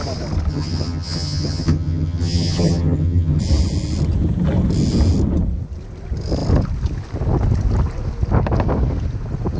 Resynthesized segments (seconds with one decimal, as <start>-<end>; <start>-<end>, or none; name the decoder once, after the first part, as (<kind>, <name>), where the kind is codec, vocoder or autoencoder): 0.5-3.4 (vocoder, HiFi-GAN)

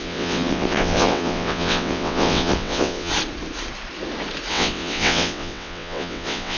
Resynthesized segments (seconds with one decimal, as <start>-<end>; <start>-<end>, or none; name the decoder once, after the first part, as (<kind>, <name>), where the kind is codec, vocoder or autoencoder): 0.0-3.1 (vocoder, WaveNeXt); 4.5-6.6